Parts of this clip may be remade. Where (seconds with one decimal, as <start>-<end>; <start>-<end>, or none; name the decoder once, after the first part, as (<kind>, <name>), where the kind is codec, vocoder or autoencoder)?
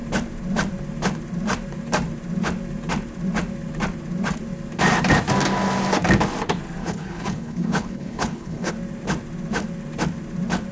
6.8-8.7 (codec, HILCodec)